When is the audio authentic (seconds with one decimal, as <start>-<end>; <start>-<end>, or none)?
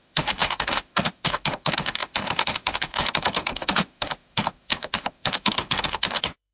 none